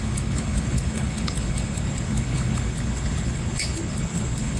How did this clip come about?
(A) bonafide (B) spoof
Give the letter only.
B